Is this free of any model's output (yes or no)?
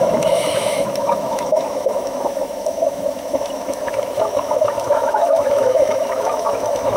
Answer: no